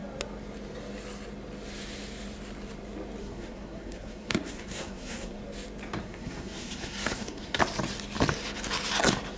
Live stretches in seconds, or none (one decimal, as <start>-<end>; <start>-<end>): 0.0-3.2; 5.4-6.0; 7.6-9.4